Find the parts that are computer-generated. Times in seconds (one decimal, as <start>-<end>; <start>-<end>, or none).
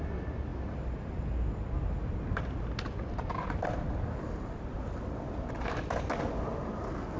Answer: none